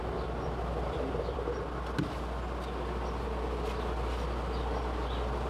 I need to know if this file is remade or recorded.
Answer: recorded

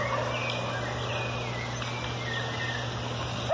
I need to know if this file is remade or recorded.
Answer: recorded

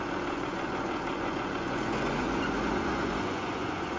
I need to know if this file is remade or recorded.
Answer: remade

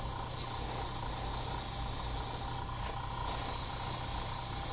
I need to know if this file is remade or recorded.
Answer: recorded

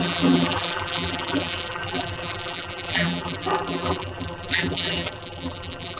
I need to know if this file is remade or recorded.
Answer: remade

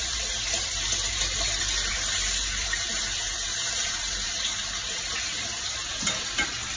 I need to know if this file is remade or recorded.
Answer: remade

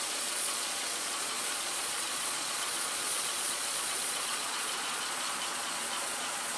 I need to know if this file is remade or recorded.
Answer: remade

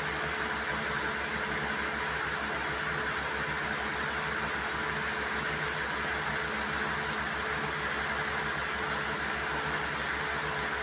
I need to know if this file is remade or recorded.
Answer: recorded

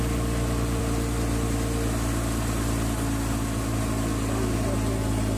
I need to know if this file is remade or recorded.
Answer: recorded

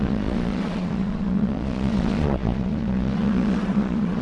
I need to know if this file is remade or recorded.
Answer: remade